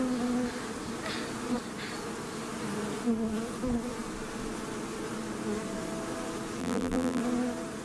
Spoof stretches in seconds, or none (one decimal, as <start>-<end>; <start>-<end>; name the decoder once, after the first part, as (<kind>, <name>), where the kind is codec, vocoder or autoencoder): 6.6-7.2 (vocoder, BigVGAN v2)